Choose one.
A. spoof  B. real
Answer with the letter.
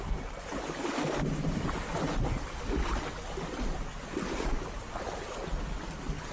B